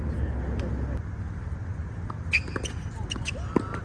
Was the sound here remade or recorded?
recorded